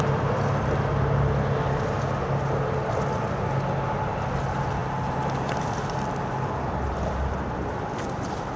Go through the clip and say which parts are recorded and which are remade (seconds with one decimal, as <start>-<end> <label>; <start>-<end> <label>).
0.0-8.6 recorded